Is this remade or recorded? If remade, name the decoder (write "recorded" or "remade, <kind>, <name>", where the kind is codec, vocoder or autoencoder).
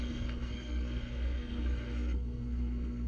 remade, codec, SNAC